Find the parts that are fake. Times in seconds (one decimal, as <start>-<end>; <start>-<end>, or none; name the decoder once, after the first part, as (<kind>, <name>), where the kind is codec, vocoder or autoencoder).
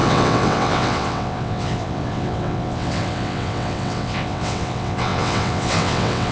0.0-6.3 (vocoder, WaveNeXt)